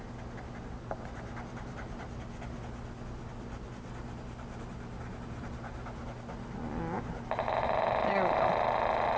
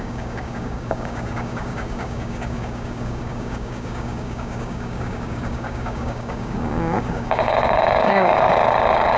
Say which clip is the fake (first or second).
second